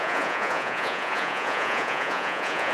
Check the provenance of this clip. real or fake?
fake